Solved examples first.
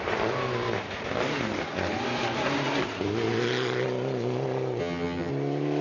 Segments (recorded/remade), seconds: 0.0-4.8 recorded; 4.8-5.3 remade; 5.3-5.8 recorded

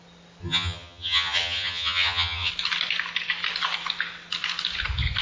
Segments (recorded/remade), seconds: 0.0-0.4 recorded; 0.4-2.5 remade; 2.5-5.2 recorded

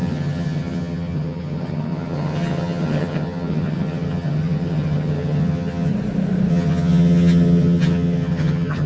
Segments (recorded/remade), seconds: 0.0-5.9 remade; 5.9-6.5 recorded; 6.5-8.9 remade

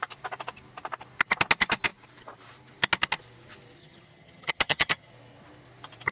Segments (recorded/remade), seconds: 0.0-3.8 recorded; 3.8-5.1 remade; 5.1-6.1 recorded

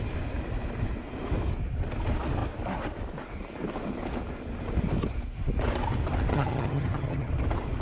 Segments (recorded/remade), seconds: 0.0-6.3 recorded; 6.3-7.3 remade; 7.3-7.8 recorded

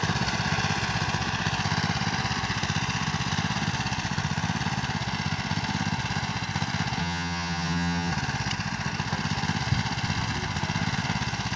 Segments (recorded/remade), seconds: 0.0-7.0 recorded; 7.0-8.1 remade; 8.1-11.6 recorded

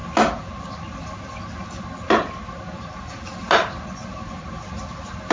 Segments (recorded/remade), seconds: 0.0-5.3 recorded